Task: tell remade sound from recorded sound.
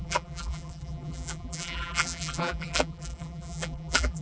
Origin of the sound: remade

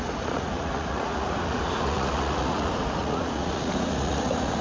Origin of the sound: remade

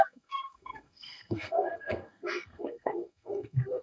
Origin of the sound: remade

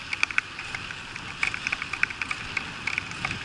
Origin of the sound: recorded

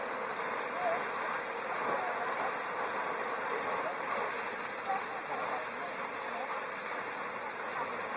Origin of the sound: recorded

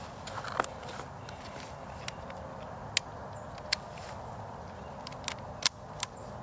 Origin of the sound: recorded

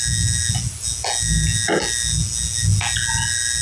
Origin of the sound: recorded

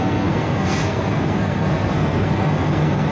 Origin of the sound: remade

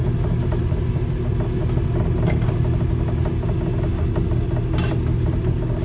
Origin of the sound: recorded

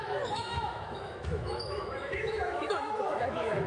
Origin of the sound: remade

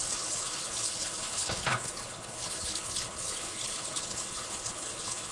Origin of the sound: remade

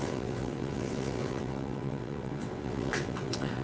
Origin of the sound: remade